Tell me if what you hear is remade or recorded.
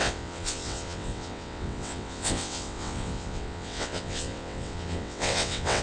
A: remade